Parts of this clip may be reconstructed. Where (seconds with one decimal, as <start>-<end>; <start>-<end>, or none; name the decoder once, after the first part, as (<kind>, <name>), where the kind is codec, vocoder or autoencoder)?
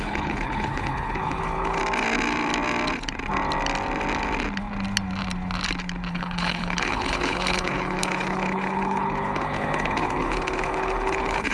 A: 0.0-1.8 (codec, HILCodec); 6.1-11.5